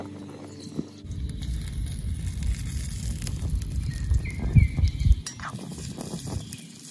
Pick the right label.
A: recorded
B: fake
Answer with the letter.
A